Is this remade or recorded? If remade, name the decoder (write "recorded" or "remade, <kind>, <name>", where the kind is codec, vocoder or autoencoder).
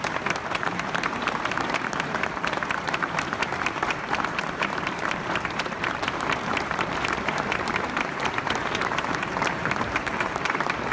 remade, vocoder, BigVGAN v2